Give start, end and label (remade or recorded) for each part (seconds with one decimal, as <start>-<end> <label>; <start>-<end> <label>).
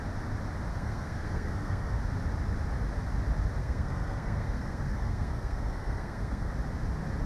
0.0-0.7 recorded; 0.7-2.0 remade; 2.0-3.6 recorded; 3.6-6.5 remade; 6.5-7.3 recorded